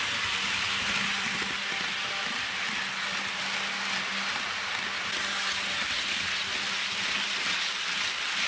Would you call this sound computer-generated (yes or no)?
no